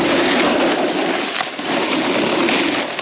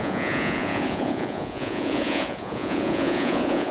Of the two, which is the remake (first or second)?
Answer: second